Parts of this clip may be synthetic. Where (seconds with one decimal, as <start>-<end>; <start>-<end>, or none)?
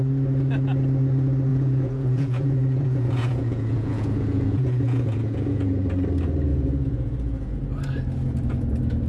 1.5-5.7; 6.5-7.5